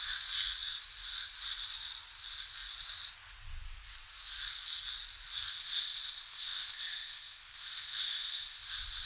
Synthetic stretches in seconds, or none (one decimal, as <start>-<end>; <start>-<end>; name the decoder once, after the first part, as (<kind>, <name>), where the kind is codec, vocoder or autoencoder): 5.5-8.6 (codec, ZipCodec)